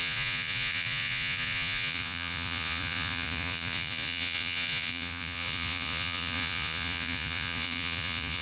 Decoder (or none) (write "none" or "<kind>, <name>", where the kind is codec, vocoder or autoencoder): vocoder, Vocos